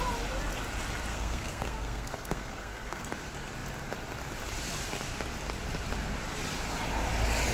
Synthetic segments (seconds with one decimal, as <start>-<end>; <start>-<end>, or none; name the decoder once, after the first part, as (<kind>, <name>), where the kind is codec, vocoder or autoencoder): 1.1-3.1 (codec, SNAC)